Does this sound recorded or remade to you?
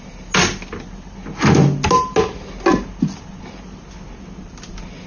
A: recorded